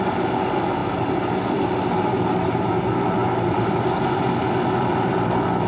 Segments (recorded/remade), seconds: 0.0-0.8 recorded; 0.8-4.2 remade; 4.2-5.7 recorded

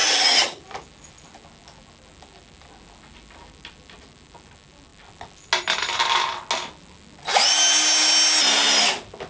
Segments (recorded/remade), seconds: 0.0-0.6 remade; 0.6-9.3 recorded

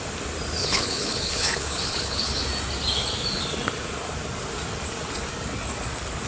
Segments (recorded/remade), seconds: 0.0-0.6 recorded; 0.6-2.4 remade; 2.4-6.3 recorded

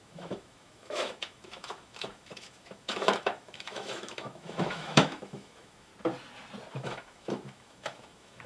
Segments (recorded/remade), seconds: 0.0-5.9 remade; 5.9-6.7 recorded; 6.7-8.5 remade

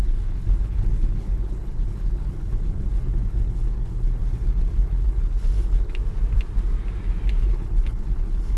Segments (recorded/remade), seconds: 0.0-6.0 remade; 6.0-7.4 recorded; 7.4-8.6 remade

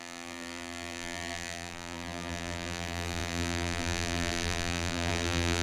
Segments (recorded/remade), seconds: 0.0-5.6 remade